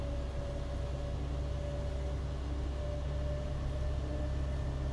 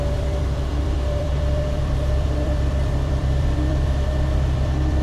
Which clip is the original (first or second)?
first